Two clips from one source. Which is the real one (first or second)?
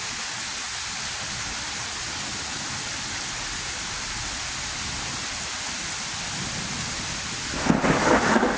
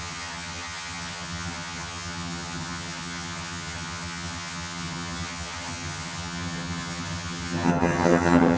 first